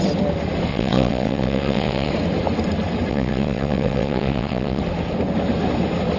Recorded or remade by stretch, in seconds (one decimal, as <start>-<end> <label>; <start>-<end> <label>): 0.0-0.7 recorded; 0.7-2.1 remade; 2.1-3.1 recorded; 3.1-4.8 remade; 4.8-6.2 recorded